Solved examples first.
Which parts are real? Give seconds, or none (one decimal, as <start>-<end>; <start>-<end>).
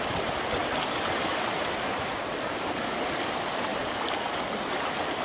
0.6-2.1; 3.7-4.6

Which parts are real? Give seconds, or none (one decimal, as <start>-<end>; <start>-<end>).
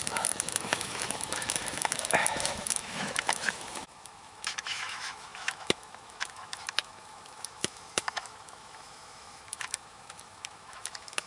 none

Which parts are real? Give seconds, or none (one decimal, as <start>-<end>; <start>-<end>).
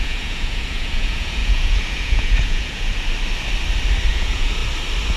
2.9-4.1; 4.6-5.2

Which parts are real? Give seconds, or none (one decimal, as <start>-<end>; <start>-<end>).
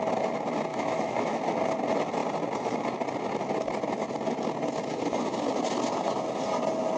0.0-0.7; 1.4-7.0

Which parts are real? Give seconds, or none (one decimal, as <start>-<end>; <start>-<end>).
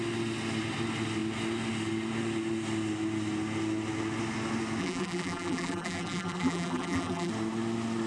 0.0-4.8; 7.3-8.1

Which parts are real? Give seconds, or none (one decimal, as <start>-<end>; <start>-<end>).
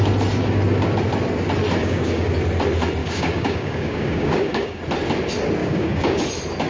0.0-1.8; 2.3-3.0; 4.8-5.6; 6.2-6.7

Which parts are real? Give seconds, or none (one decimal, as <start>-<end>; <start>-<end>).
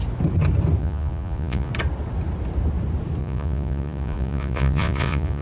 0.0-0.8; 1.7-3.2